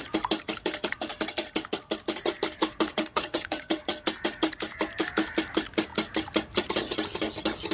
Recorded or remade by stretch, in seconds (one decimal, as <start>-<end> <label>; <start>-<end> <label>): 0.0-2.6 recorded; 2.6-3.8 remade; 3.8-7.7 recorded